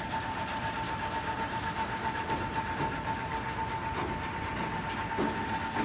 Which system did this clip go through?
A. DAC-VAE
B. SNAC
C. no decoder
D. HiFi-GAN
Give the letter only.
C